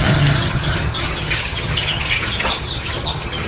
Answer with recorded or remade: remade